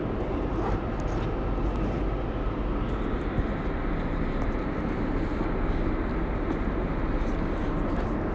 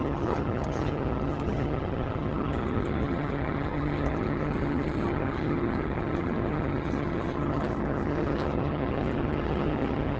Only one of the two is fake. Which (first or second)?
second